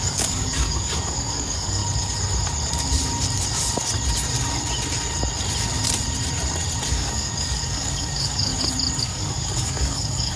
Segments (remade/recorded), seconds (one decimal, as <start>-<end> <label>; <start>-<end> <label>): 0.0-1.8 remade; 1.8-6.9 recorded; 6.9-8.5 remade; 8.5-9.0 recorded; 9.0-10.4 remade